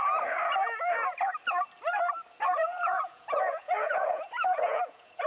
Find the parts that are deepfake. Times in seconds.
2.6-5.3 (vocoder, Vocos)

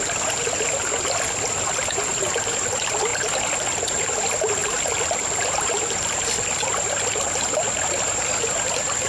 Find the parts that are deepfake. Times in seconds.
none

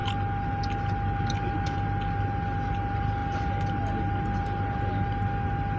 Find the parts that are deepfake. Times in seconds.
none

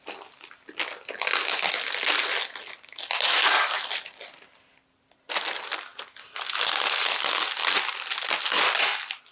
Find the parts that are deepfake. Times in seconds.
none

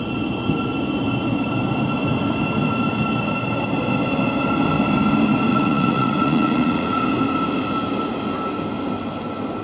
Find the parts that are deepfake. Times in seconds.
5.5-7.0 (vocoder, Vocos)